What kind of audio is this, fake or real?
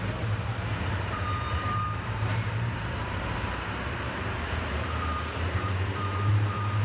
fake